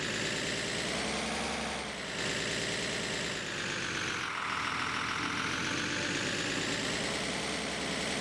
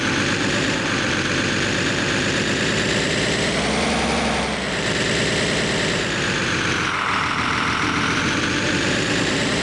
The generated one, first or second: second